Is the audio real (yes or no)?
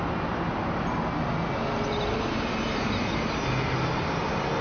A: yes